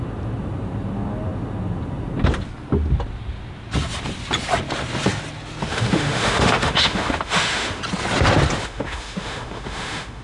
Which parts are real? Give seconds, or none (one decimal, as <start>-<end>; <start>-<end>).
0.0-5.7; 7.8-8.6